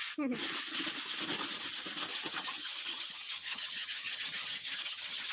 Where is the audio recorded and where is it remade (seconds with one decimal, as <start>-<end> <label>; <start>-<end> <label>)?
0.0-2.1 recorded; 2.1-5.3 remade